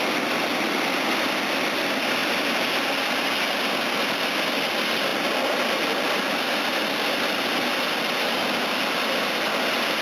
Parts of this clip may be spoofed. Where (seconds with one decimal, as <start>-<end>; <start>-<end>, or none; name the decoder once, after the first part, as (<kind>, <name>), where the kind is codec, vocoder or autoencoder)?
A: 2.2-2.8 (vocoder, BigVGAN v2)